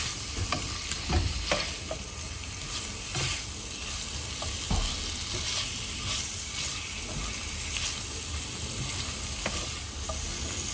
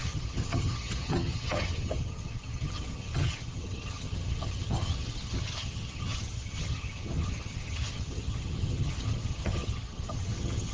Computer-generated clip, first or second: second